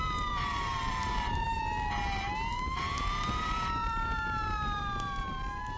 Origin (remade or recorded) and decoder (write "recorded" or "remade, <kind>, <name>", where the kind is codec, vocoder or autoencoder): remade, vocoder, BigVGAN v2